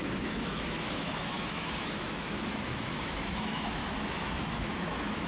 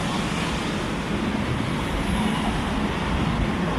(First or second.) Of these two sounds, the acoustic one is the second